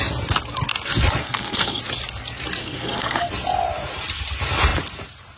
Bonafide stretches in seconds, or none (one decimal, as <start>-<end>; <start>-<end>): 0.0-1.2; 1.8-2.6; 3.3-5.4